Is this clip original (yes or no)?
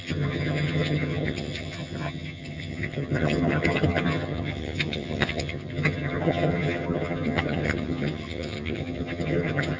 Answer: no